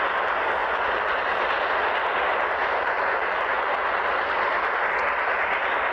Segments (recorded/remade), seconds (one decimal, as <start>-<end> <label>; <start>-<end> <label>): 0.0-0.6 recorded; 0.6-1.2 remade; 1.2-2.6 recorded; 2.6-4.0 remade; 4.0-5.9 recorded